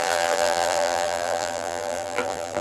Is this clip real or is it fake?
fake